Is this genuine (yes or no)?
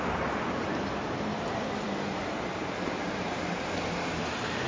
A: no